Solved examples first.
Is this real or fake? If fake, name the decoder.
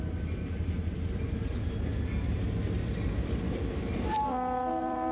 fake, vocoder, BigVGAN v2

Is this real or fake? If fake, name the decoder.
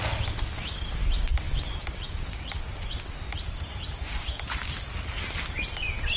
real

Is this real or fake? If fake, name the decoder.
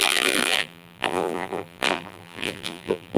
fake, vocoder, BigVGAN v2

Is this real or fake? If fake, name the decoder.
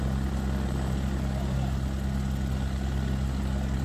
real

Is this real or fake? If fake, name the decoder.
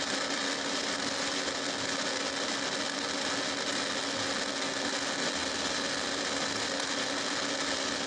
real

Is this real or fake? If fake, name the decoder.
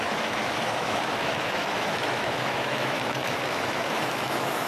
fake, autoencoder, DAC-VAE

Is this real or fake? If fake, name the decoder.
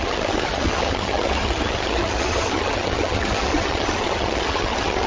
fake, vocoder, HiFi-GAN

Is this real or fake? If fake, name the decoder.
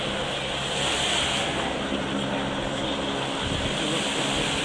real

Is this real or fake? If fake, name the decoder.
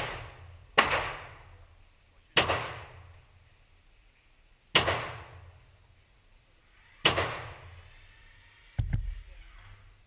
real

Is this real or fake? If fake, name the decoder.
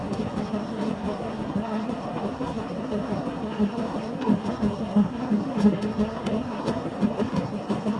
fake, codec, SNAC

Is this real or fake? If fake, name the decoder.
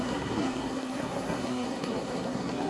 fake, codec, SNAC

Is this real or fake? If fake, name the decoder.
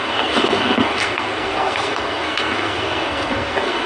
fake, codec, SNAC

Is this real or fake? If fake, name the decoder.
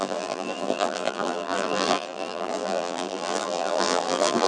fake, vocoder, BigVGAN v2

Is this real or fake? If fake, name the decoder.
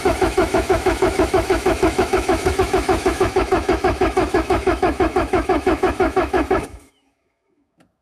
fake, autoencoder, DAC-VAE